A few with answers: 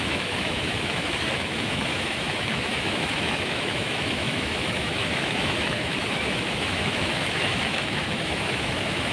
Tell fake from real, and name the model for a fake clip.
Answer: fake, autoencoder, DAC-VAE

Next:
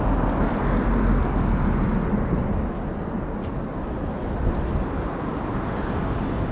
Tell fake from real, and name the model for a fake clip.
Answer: real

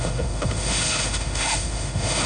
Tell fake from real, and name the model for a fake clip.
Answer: fake, autoencoder, DAC-VAE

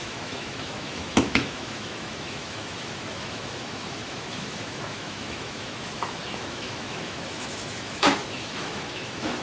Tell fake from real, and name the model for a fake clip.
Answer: fake, autoencoder, DAC-VAE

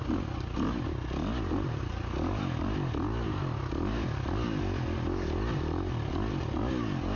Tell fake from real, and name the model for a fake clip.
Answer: real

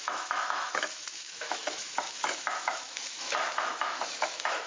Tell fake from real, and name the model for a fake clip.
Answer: fake, autoencoder, DAC-VAE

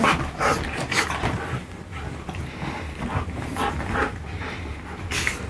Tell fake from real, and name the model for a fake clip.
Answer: real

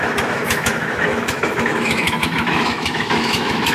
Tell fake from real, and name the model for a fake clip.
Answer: fake, autoencoder, DAC-VAE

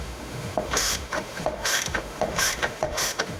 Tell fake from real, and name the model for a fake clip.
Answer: fake, autoencoder, DAC-VAE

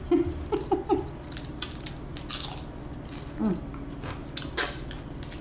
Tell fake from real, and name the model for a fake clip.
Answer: real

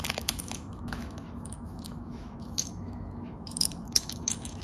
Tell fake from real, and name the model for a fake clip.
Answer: fake, autoencoder, DAC-VAE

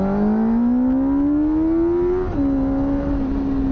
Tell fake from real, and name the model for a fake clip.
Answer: real